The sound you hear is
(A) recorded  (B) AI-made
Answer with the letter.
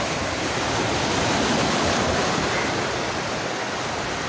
A